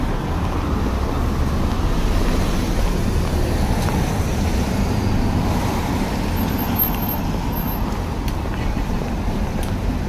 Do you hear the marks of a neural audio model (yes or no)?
no